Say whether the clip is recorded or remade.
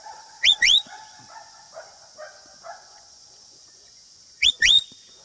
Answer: remade